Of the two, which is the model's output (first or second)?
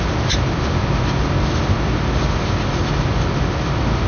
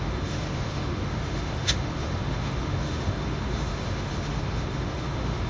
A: second